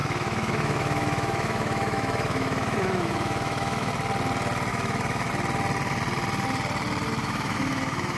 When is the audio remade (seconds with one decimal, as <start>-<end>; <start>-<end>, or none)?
0.0-3.9; 4.7-5.3; 7.2-8.2